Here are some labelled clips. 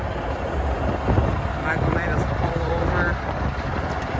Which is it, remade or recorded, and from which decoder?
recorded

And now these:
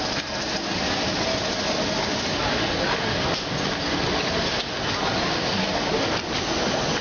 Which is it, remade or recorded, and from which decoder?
recorded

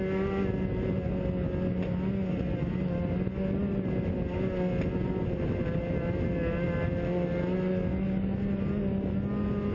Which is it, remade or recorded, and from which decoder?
recorded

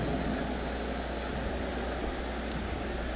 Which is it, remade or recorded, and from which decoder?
recorded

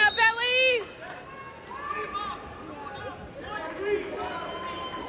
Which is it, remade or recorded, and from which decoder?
recorded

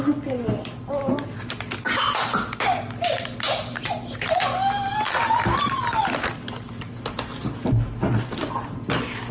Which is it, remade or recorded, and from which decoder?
recorded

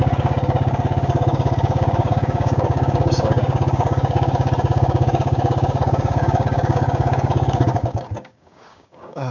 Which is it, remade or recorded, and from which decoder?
remade, codec, DAC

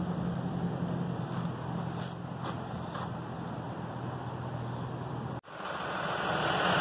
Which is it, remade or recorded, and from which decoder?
recorded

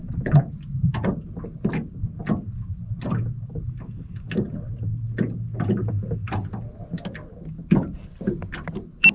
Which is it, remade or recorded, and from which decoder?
recorded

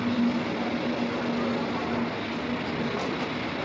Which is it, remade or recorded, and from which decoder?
recorded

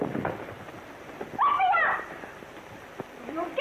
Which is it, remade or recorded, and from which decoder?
recorded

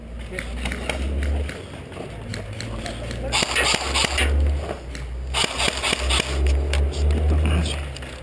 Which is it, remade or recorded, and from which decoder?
recorded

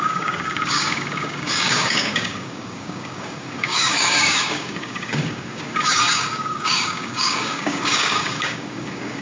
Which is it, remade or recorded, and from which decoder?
remade, codec, DAC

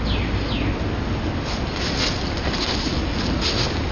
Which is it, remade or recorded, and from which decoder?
recorded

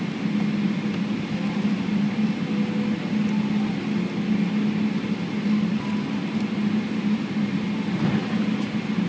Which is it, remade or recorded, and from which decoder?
recorded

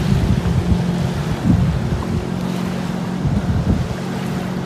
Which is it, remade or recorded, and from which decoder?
recorded